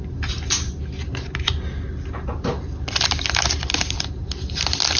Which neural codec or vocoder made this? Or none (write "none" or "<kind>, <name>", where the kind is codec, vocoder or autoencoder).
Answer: none